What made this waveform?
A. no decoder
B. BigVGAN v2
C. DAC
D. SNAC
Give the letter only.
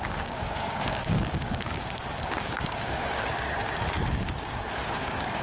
C